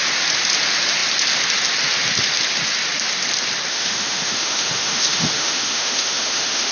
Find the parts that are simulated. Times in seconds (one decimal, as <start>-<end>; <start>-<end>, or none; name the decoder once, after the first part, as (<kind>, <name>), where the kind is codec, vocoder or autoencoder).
3.7-6.7 (autoencoder, DAC-VAE)

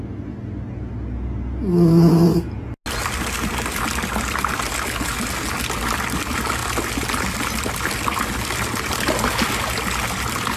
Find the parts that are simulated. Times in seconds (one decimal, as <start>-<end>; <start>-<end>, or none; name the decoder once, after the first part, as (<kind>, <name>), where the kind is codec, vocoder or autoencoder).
none

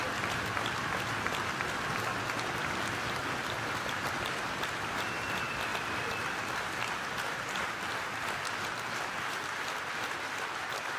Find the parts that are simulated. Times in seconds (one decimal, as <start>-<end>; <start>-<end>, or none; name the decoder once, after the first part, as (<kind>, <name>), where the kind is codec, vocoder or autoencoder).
none